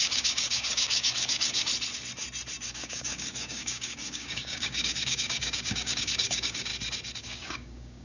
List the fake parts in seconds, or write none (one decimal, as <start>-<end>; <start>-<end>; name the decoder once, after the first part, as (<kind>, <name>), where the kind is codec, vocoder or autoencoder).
0.0-1.7 (codec, DAC); 2.7-6.7; 7.2-8.0